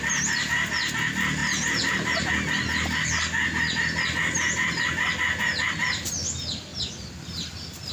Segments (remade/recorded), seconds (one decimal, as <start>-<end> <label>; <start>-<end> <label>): 0.0-7.9 recorded